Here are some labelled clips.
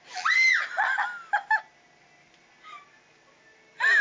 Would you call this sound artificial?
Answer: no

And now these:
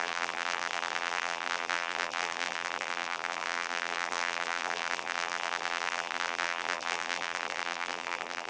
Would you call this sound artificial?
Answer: yes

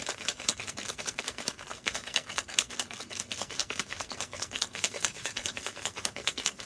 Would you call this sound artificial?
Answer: yes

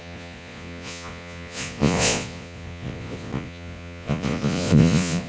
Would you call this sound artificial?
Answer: yes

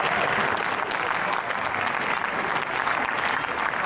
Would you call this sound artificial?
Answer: no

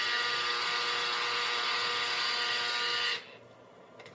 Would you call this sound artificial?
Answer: no